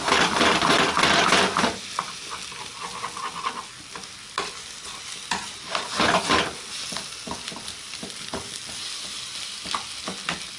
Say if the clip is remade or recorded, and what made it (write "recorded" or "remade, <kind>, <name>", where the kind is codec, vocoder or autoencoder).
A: recorded